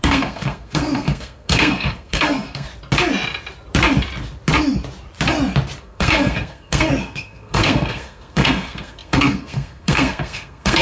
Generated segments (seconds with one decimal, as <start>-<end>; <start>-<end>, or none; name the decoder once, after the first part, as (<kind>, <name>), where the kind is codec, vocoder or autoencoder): 0.0-2.7 (codec, SNAC); 5.8-10.8